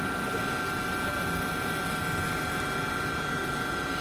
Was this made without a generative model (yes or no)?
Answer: yes